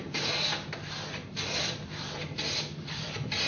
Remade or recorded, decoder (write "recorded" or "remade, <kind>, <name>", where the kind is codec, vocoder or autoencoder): recorded